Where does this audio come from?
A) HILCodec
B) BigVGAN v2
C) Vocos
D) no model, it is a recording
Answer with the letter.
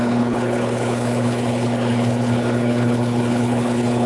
A